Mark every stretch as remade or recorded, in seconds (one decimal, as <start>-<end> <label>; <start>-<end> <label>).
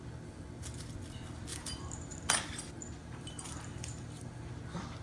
0.0-1.5 recorded; 1.5-2.3 remade; 2.3-3.0 recorded; 3.0-4.5 remade; 4.5-5.0 recorded